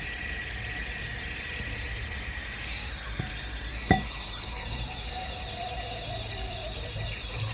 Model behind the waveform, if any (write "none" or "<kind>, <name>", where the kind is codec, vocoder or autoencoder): none